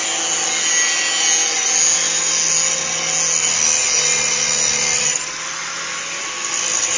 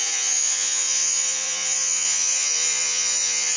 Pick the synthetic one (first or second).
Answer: second